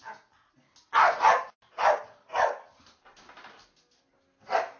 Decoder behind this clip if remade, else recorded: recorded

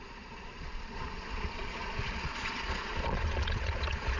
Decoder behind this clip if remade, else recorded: remade, vocoder, Vocos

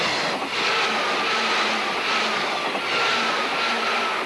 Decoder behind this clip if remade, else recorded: recorded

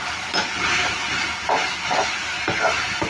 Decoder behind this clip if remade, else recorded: recorded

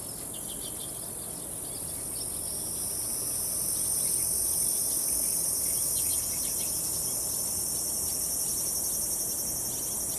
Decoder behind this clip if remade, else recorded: recorded